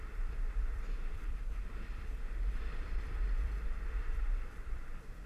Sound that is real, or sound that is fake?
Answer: fake